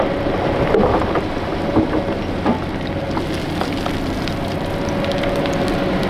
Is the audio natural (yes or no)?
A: yes